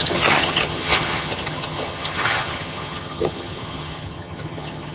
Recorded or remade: remade